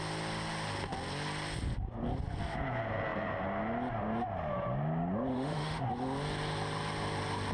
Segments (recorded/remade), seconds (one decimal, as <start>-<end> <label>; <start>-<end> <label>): 0.0-5.3 recorded; 5.3-5.8 remade; 5.8-7.5 recorded